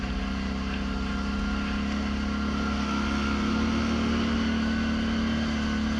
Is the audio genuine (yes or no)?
yes